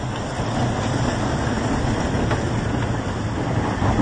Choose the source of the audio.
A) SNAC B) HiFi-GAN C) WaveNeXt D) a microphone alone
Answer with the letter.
D